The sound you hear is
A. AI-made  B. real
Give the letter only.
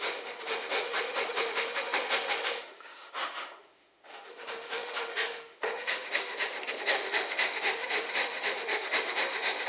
A